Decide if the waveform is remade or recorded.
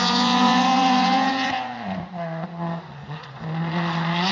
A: remade